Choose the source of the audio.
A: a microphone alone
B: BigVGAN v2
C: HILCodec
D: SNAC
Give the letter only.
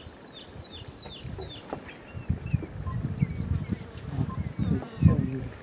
A